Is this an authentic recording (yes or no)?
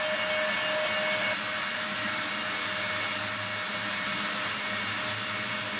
yes